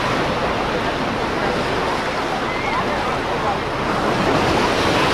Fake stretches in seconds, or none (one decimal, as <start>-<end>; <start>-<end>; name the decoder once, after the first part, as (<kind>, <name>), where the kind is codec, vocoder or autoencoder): none